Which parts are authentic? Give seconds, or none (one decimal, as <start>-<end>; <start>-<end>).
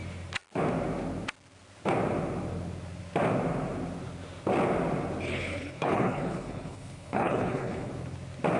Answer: 0.0-5.3; 7.9-8.6